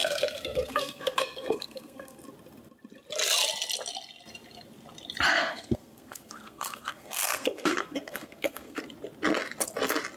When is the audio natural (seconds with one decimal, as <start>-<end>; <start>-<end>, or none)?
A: 2.2-5.3; 8.8-10.2